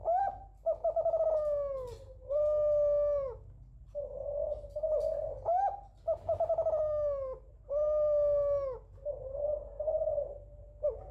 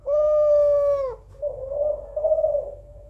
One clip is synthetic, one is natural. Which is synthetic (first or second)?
second